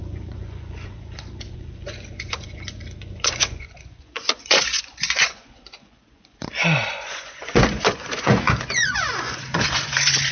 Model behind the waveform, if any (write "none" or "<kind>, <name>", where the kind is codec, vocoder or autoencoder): vocoder, Vocos